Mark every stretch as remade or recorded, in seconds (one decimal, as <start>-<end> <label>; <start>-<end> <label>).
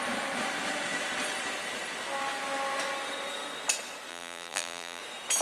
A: 0.0-4.1 recorded; 4.1-5.0 remade; 5.0-5.4 recorded